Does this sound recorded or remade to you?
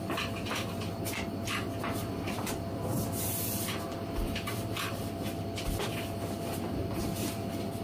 recorded